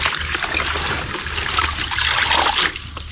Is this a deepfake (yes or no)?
no